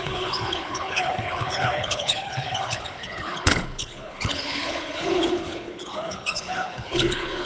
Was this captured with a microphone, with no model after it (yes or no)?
no